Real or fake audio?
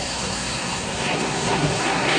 fake